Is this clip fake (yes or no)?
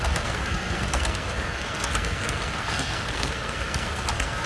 yes